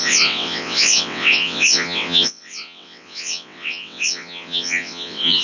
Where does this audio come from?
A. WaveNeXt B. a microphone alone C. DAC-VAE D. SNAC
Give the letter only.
A